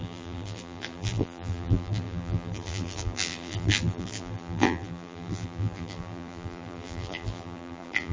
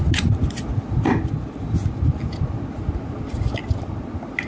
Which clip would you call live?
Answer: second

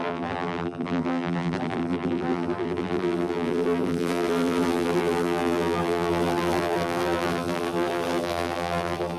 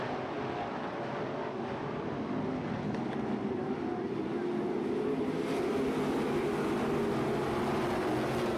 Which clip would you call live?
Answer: second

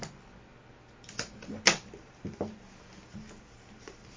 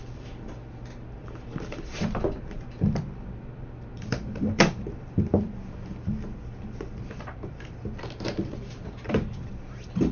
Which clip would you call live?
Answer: first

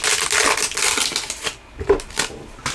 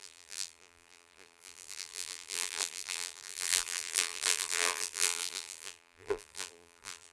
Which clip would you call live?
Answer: first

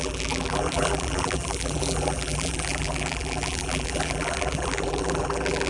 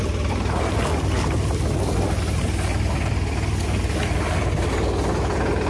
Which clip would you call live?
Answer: second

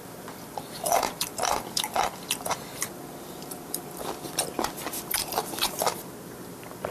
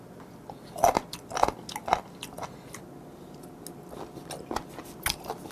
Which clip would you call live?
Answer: second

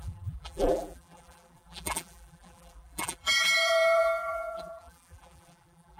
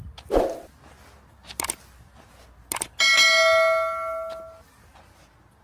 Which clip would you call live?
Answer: second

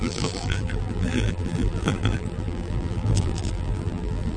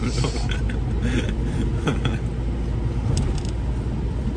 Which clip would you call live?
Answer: second